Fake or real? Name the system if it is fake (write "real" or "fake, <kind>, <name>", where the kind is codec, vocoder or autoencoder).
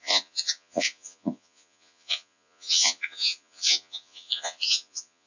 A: fake, vocoder, Vocos